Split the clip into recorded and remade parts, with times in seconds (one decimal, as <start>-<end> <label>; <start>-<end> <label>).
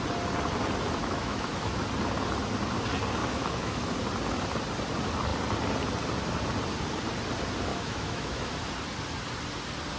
0.0-1.0 recorded; 1.0-1.8 remade; 1.8-3.2 recorded; 3.2-3.9 remade; 3.9-7.7 recorded; 7.7-8.5 remade; 8.5-10.0 recorded